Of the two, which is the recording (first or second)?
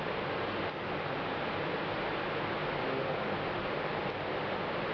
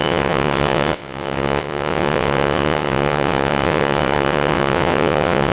first